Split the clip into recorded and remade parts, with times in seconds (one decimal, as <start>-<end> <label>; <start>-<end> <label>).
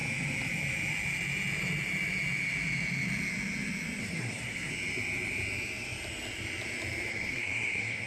0.0-4.0 recorded; 4.0-4.7 remade; 4.7-7.1 recorded; 7.1-8.1 remade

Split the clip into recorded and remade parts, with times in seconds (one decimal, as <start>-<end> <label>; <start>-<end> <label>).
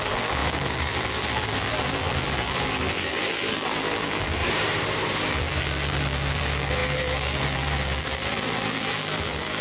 0.0-4.4 remade; 4.4-5.3 recorded; 5.3-9.6 remade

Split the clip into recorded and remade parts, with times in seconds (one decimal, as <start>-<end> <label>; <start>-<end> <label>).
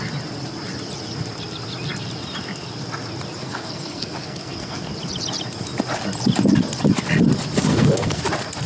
0.0-3.4 recorded; 3.4-4.9 remade; 4.9-7.7 recorded; 7.7-8.2 remade; 8.2-8.7 recorded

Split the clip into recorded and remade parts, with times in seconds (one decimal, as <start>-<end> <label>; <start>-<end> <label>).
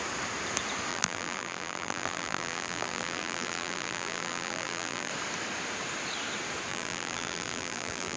0.0-0.9 recorded; 0.9-5.1 remade; 5.1-6.7 recorded; 6.7-8.2 remade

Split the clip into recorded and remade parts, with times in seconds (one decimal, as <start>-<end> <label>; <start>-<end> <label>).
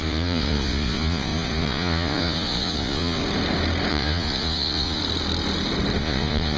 0.0-3.2 remade; 3.2-3.9 recorded; 3.9-5.0 remade; 5.0-6.0 recorded; 6.0-6.6 remade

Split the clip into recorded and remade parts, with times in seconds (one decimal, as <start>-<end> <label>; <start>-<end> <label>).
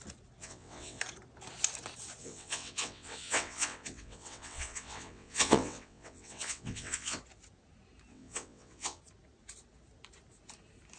0.0-0.4 recorded; 0.4-1.0 remade; 1.0-2.2 recorded; 2.2-7.2 remade; 7.2-8.1 recorded; 8.1-9.0 remade; 9.0-11.0 recorded